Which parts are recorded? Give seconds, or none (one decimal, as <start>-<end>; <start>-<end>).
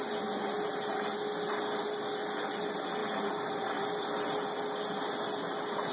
0.0-5.9